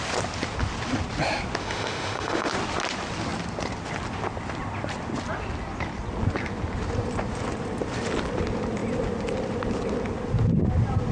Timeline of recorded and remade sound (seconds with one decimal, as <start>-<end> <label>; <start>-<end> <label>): 0.0-1.6 recorded; 1.6-2.5 remade; 2.5-11.1 recorded